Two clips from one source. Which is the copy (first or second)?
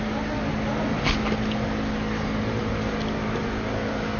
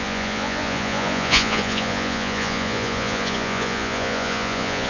second